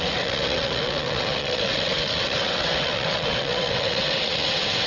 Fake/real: fake